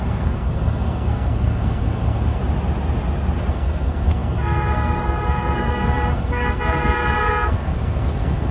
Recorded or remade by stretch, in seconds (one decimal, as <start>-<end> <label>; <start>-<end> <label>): 0.0-2.4 remade; 2.4-3.5 recorded; 3.5-8.5 remade